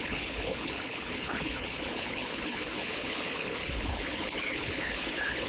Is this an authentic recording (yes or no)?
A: no